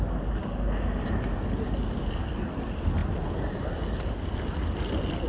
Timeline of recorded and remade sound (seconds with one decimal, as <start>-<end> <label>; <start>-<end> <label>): 0.0-0.4 recorded; 0.4-1.1 remade; 1.1-5.3 recorded